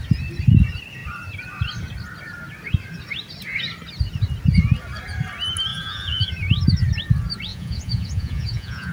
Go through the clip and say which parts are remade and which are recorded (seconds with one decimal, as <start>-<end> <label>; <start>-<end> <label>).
0.0-5.7 recorded; 5.7-6.3 remade; 6.3-7.5 recorded; 7.5-8.9 remade